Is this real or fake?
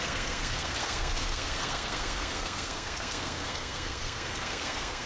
fake